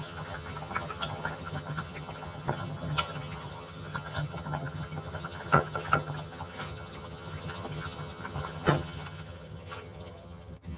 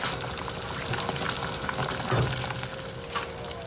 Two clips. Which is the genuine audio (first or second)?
second